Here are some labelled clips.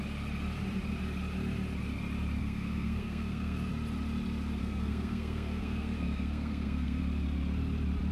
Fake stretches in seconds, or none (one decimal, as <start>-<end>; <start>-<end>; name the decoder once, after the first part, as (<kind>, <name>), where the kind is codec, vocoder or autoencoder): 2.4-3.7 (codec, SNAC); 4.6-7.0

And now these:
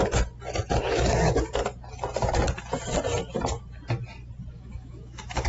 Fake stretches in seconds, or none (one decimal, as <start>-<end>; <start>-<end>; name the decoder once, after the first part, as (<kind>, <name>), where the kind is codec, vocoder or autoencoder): 0.8-1.6 (autoencoder, DAC-VAE); 4.5-5.5

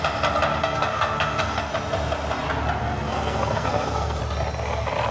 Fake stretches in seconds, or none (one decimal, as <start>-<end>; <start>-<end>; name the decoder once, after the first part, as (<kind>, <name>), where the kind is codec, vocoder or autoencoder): 0.6-1.7 (codec, SNAC); 2.8-4.2